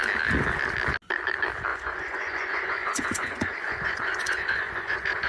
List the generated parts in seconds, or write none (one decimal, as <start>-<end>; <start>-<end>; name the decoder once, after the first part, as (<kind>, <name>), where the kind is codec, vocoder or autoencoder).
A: 1.7-5.3 (vocoder, Vocos)